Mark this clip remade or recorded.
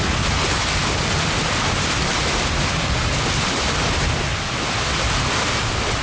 recorded